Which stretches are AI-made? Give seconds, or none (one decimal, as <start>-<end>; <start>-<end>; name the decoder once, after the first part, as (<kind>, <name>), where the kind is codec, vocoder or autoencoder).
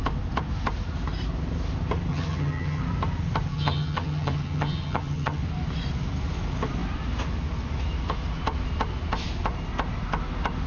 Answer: 2.1-2.8 (vocoder, HiFi-GAN); 3.5-5.4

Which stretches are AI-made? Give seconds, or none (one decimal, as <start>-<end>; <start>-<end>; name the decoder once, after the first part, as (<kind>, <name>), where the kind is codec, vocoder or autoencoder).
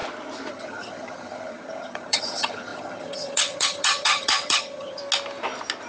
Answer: 0.5-5.0 (vocoder, HiFi-GAN)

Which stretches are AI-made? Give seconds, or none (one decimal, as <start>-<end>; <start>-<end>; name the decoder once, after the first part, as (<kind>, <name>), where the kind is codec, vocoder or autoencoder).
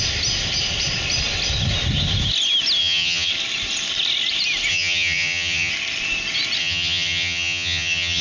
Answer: 2.8-3.3 (vocoder, HiFi-GAN); 4.7-5.7; 6.6-8.2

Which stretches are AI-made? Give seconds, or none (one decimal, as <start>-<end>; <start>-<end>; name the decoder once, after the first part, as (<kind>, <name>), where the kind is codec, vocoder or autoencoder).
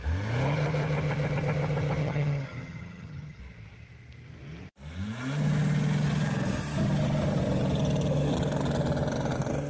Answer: 2.0-3.4 (vocoder, HiFi-GAN)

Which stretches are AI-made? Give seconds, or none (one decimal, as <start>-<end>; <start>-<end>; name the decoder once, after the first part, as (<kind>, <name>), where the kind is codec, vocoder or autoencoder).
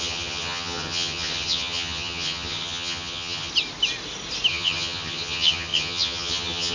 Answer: 0.0-3.5 (vocoder, HiFi-GAN); 4.5-6.7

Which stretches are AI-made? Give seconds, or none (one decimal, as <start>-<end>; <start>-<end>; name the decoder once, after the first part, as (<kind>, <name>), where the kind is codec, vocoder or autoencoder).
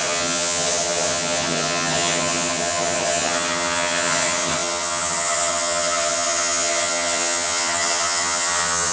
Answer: 0.0-8.9 (vocoder, HiFi-GAN)